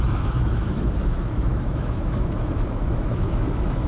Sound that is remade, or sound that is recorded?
remade